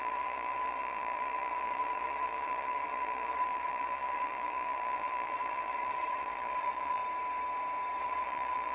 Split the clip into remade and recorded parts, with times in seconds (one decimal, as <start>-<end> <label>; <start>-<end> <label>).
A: 0.0-7.0 remade; 7.0-8.0 recorded; 8.0-8.7 remade